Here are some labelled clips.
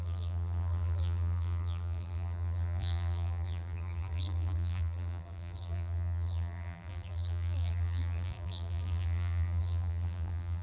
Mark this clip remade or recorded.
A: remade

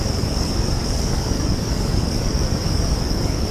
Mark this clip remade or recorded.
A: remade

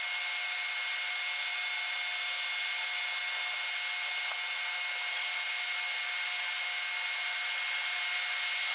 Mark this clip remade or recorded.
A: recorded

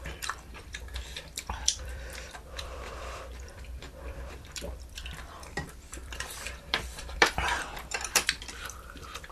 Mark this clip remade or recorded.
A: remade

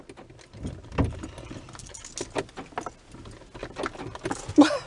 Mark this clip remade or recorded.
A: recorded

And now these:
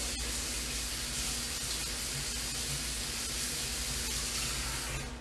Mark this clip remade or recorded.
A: recorded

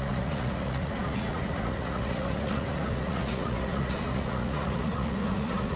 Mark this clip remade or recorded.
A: remade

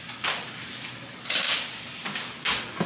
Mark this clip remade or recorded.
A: recorded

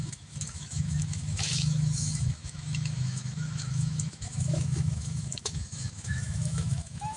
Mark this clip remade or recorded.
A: remade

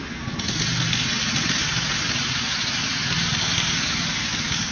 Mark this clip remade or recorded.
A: recorded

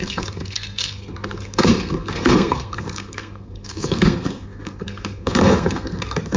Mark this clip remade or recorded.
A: remade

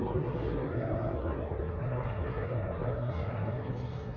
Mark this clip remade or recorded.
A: remade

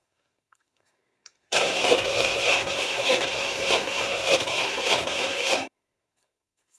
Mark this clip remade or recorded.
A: remade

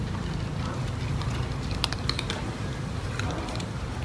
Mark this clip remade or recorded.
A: remade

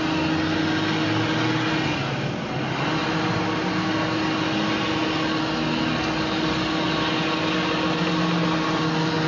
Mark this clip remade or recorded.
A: recorded